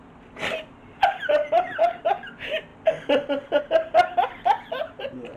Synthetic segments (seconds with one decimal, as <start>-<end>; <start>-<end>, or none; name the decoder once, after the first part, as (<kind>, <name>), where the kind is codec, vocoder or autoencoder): 1.2-2.0 (vocoder, BigVGAN v2); 4.8-5.4